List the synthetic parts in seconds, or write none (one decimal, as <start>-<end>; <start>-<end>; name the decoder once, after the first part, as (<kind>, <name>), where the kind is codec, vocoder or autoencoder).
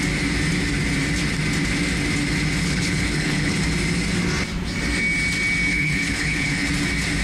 2.6-3.6 (codec, HILCodec); 5.7-6.7